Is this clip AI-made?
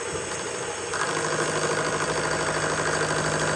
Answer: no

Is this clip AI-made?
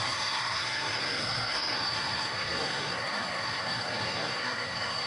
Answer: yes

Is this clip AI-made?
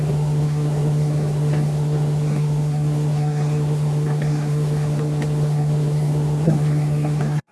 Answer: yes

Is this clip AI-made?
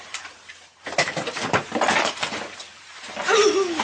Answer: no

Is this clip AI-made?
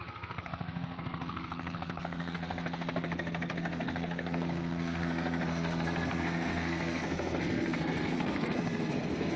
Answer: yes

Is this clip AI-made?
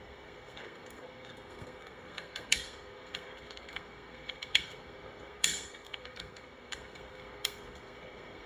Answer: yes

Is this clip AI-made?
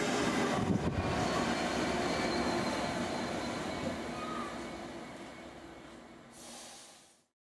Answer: no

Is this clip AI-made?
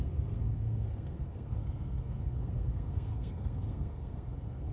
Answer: yes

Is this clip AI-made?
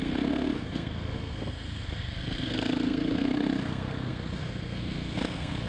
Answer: yes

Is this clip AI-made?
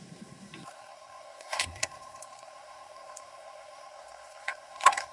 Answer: yes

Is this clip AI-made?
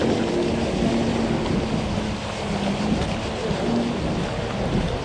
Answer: no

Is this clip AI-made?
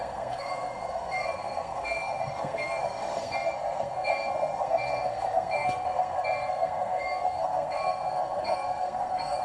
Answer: yes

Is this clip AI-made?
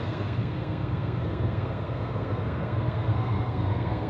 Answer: yes